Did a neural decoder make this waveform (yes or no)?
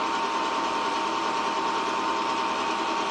no